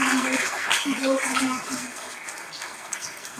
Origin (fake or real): fake